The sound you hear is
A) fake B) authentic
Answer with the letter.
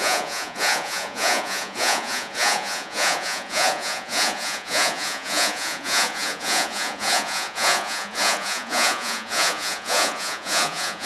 A